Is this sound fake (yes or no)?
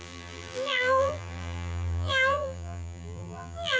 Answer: yes